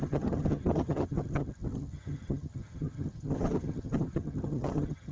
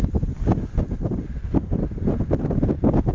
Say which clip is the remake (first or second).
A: first